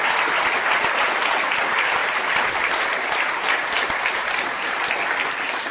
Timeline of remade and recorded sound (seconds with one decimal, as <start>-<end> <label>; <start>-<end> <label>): 0.0-5.7 recorded